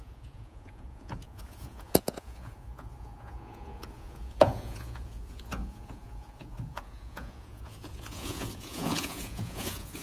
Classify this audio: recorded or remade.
remade